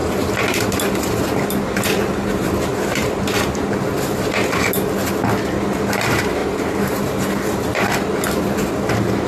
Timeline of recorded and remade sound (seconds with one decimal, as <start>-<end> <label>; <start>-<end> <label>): 0.0-1.2 remade; 1.2-2.7 recorded; 2.7-3.2 remade; 3.2-6.4 recorded; 6.4-7.3 remade; 7.3-9.3 recorded